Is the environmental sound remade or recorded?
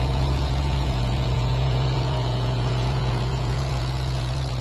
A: remade